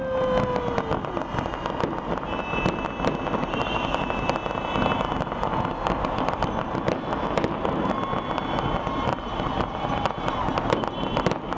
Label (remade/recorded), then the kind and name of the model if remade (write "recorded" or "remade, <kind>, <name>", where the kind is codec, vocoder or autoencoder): recorded